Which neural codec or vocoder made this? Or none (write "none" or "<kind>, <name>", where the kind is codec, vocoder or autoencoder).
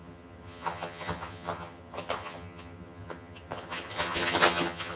vocoder, HiFi-GAN